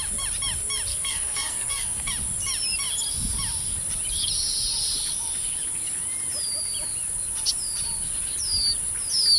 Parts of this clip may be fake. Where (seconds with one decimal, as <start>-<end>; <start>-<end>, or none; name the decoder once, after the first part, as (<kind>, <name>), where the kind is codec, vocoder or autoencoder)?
0.9-2.1 (codec, SNAC)